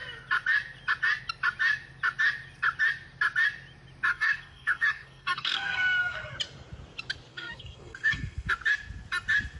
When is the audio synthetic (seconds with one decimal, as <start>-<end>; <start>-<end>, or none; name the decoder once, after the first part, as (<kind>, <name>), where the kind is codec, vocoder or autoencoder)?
4.1-6.3 (codec, SNAC); 7.3-8.5